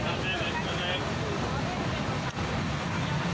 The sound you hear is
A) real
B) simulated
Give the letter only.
A